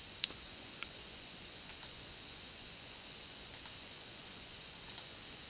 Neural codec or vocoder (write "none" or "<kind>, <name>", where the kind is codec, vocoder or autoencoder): vocoder, Vocos